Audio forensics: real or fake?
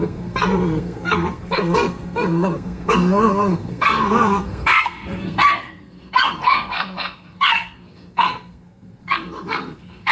fake